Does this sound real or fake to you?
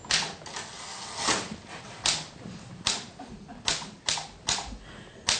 real